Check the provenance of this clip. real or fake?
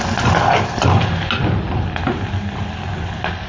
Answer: real